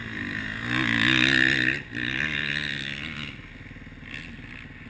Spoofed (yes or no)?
no